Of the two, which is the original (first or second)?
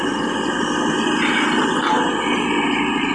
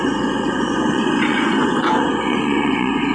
first